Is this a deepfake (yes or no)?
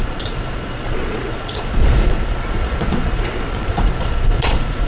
yes